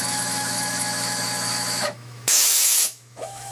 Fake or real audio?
fake